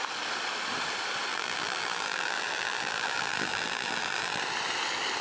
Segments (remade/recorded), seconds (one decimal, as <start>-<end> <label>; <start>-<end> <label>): 0.0-1.3 recorded; 1.3-4.4 remade; 4.4-5.2 recorded